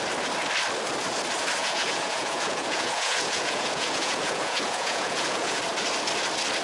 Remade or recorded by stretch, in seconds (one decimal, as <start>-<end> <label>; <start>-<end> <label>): 0.0-1.6 recorded; 1.6-5.6 remade; 5.6-6.6 recorded